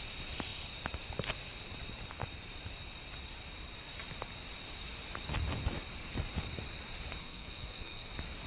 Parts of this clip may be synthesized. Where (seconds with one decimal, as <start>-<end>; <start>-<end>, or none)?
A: 7.2-8.1